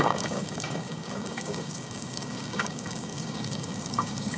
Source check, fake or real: fake